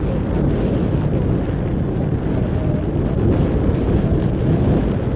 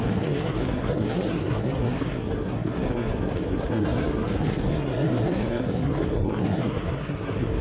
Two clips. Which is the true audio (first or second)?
first